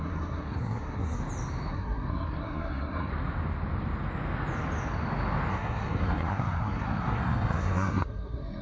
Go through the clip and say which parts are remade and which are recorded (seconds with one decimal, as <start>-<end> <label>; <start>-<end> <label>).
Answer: 0.0-1.2 remade; 1.2-1.7 recorded; 1.7-3.1 remade; 3.1-5.5 recorded; 5.5-8.6 remade